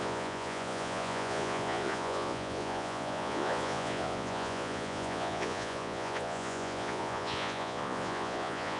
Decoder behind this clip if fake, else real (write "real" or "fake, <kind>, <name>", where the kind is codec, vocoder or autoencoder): fake, vocoder, Vocos